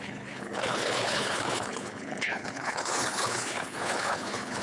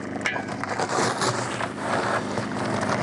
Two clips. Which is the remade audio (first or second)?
first